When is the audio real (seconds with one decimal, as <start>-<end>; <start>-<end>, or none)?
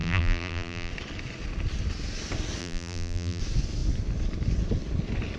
0.9-2.6; 3.4-5.4